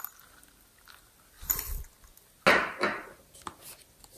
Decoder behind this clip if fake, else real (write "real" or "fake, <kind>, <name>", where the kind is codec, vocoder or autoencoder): real